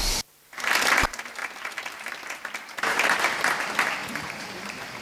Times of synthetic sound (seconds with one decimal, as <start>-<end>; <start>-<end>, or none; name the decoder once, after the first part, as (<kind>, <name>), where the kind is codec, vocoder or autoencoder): 0.0-5.0 (vocoder, BigVGAN v2)